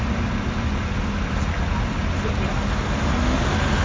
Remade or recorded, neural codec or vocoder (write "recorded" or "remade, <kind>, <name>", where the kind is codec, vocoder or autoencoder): recorded